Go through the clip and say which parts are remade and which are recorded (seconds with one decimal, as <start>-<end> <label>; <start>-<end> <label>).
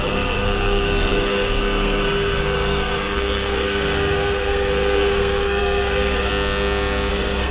0.0-6.3 remade; 6.3-7.1 recorded; 7.1-7.5 remade